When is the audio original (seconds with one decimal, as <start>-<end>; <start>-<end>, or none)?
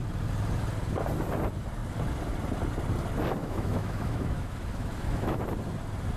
0.0-3.4; 5.4-6.2